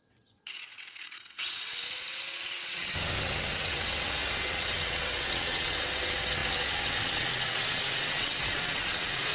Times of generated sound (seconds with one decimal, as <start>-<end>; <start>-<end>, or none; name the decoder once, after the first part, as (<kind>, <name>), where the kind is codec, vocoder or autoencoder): 0.0-9.3 (vocoder, WaveNeXt)